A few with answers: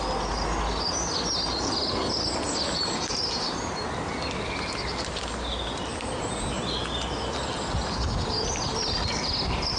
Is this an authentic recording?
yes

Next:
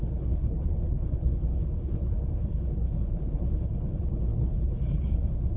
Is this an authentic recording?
no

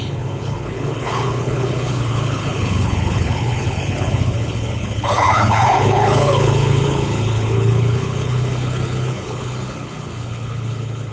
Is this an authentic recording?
no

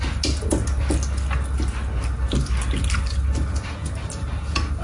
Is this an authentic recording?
yes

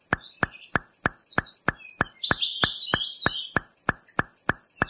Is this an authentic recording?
yes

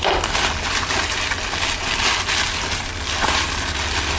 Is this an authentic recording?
yes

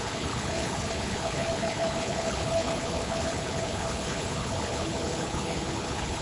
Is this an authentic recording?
no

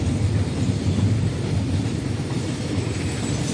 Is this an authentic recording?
yes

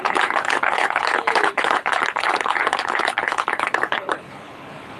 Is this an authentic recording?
no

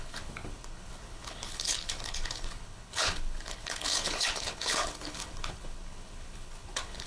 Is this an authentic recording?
no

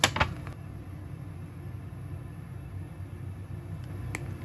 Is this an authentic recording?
yes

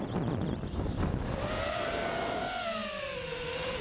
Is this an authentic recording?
yes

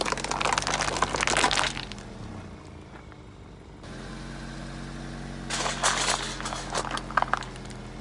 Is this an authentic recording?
yes